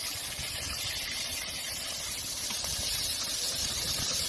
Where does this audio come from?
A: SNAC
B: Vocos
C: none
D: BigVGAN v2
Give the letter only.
D